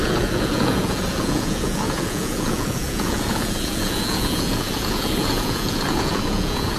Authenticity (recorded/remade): remade